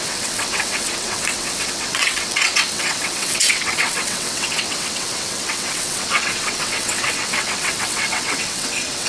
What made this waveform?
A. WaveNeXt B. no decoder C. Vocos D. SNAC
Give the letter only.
A